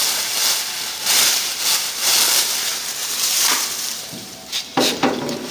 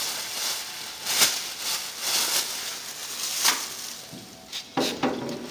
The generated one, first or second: first